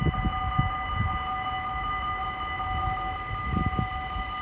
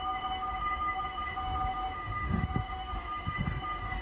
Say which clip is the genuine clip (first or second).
first